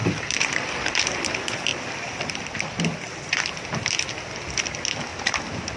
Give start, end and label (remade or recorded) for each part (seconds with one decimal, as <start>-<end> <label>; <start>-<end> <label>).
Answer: 0.0-1.1 remade; 1.1-1.7 recorded; 1.7-3.1 remade; 3.1-5.8 recorded